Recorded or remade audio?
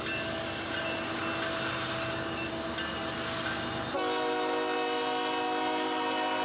recorded